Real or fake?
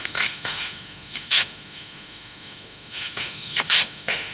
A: fake